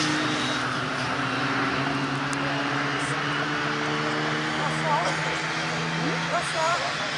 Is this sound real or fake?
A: real